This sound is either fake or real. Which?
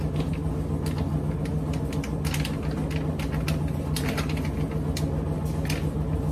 real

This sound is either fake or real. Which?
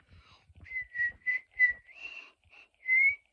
fake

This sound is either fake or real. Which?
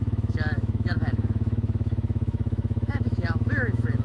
fake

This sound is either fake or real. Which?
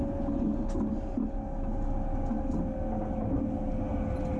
real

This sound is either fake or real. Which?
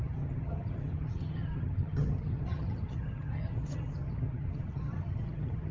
fake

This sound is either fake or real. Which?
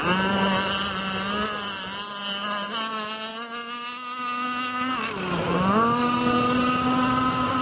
real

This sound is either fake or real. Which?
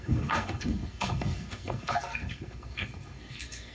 fake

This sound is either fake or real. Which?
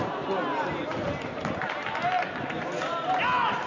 real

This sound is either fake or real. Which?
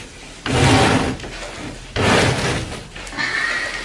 real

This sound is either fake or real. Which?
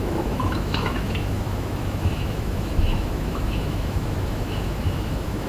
fake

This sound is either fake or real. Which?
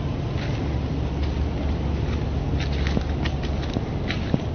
real